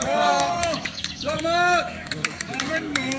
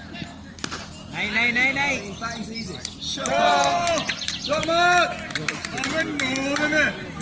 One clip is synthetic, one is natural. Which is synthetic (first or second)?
first